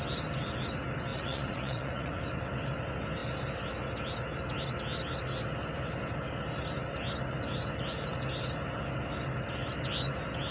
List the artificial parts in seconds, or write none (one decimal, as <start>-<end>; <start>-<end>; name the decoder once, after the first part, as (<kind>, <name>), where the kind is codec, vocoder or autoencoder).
1.1-2.2 (vocoder, Vocos)